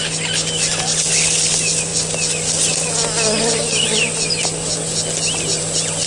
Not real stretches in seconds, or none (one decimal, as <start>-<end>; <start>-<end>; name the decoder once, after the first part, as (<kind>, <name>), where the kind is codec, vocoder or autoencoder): none

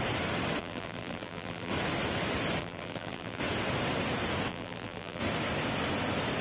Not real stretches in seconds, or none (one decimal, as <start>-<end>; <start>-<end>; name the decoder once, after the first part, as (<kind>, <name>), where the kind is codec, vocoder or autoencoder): 0.6-1.7 (vocoder, BigVGAN v2); 2.6-3.4; 4.5-5.2

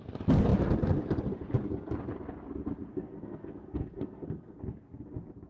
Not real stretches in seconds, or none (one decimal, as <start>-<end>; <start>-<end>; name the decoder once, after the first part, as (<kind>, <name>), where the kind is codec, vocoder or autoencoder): 2.9-4.6 (codec, SNAC)

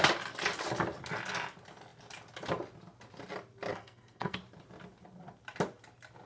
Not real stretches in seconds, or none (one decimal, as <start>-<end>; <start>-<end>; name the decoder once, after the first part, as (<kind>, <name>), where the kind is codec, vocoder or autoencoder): 3.7-4.4 (codec, SNAC)

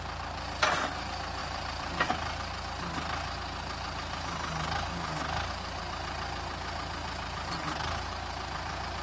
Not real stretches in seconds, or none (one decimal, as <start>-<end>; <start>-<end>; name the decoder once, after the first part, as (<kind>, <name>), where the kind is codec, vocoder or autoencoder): 1.4-2.1 (vocoder, BigVGAN v2)

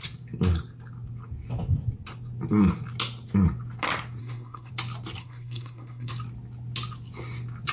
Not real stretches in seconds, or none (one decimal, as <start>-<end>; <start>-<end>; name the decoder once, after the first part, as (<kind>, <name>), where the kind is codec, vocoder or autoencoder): 4.2-4.7 (codec, SNAC); 5.2-6.1

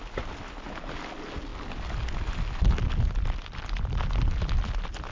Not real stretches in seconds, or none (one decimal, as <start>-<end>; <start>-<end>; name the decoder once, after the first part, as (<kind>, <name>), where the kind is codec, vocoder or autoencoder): 1.5-4.6 (vocoder, BigVGAN v2)